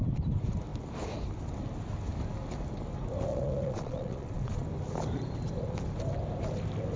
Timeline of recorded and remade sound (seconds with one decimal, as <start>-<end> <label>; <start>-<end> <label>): 0.0-3.3 recorded; 3.3-4.6 remade; 4.6-7.0 recorded